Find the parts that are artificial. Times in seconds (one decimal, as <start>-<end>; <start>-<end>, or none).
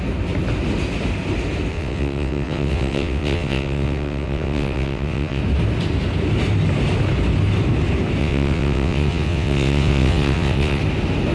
1.7-5.4; 8.2-10.8